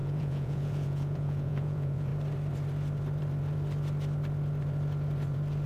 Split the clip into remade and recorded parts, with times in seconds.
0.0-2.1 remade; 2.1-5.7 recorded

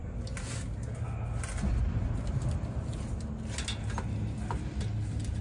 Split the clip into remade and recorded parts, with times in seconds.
0.0-5.4 recorded